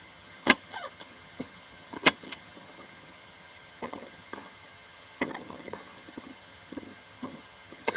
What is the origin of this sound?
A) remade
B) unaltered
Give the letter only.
A